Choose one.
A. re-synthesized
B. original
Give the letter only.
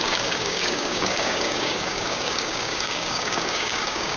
A